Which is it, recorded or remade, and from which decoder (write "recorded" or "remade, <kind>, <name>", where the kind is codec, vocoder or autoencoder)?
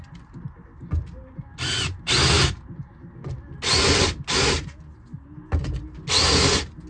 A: recorded